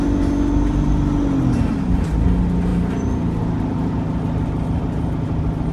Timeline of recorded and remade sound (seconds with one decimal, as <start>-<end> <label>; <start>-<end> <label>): 0.0-5.7 recorded